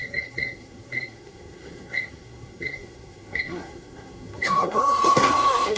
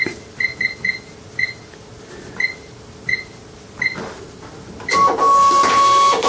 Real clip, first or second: second